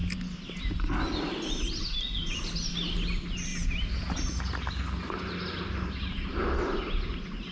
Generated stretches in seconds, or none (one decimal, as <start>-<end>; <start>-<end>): none